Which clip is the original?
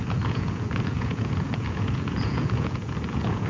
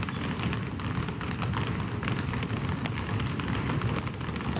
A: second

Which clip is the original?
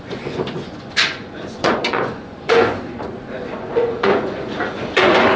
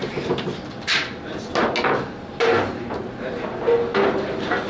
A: second